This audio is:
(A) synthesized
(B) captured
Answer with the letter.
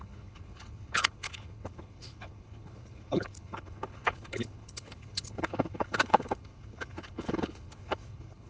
A